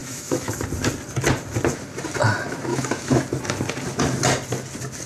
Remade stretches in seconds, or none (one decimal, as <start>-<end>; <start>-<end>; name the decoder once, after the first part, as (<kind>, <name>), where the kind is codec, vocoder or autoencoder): 0.0-0.5 (autoencoder, DAC-VAE); 2.7-3.2